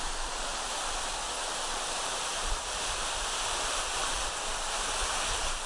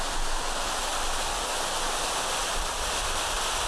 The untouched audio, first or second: second